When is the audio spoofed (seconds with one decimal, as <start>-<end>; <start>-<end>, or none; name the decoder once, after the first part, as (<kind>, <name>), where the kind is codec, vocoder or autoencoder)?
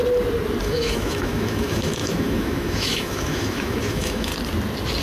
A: 0.6-4.3 (autoencoder, DAC-VAE)